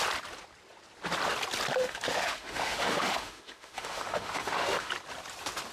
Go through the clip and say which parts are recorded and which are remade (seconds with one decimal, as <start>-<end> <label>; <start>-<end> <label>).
0.0-1.8 recorded; 1.8-4.9 remade; 4.9-5.7 recorded